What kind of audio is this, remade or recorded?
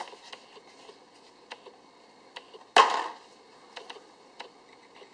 recorded